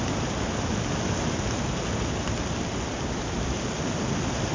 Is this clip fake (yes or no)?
no